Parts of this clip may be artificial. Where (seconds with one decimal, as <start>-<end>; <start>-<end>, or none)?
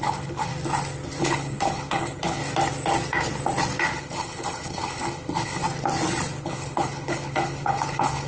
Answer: 0.0-0.5; 1.2-2.4; 3.8-5.6; 6.4-8.3